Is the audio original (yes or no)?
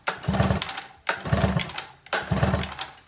yes